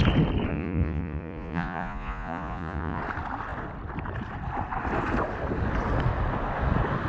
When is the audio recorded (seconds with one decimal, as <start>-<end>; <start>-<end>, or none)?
0.0-0.5; 3.0-7.1